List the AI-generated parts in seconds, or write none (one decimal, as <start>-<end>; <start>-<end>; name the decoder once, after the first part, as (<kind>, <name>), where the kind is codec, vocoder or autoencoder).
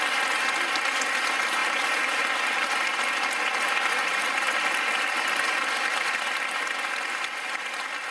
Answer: 1.6-2.2 (vocoder, BigVGAN v2); 4.1-4.8